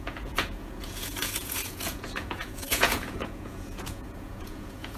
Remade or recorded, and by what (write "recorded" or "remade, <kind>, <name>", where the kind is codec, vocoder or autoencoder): remade, vocoder, Vocos